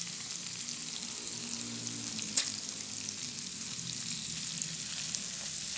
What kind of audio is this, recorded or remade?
recorded